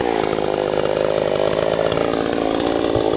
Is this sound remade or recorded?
recorded